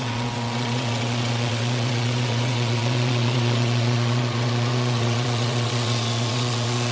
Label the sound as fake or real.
fake